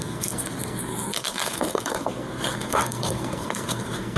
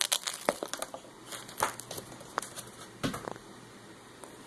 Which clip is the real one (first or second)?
second